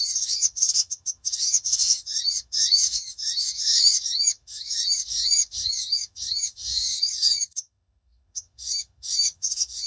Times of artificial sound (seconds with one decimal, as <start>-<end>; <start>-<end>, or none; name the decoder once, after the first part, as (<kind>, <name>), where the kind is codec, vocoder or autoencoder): 0.0-9.9 (autoencoder, DAC-VAE)